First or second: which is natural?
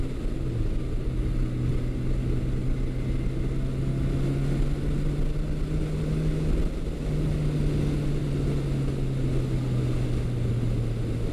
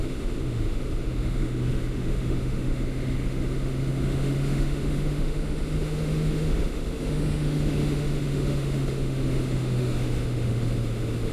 first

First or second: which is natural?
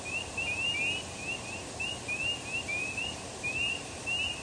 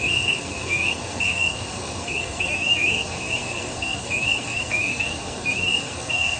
first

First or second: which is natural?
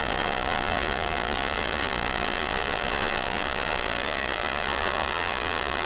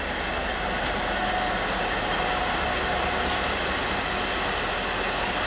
second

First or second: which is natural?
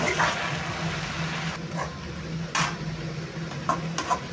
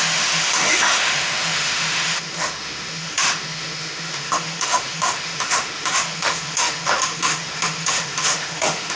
first